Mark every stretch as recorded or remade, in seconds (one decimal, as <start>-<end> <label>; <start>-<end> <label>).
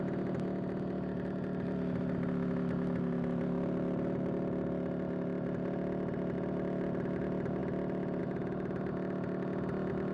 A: 0.0-10.1 recorded